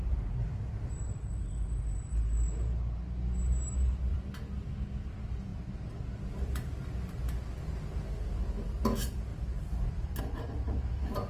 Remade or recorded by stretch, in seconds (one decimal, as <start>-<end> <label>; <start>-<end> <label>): 0.0-0.4 recorded; 0.4-1.0 remade; 1.0-4.1 recorded; 4.1-4.7 remade; 4.7-5.5 recorded; 5.5-6.9 remade; 6.9-11.3 recorded